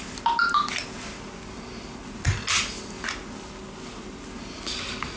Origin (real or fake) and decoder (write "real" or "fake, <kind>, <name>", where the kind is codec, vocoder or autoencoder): real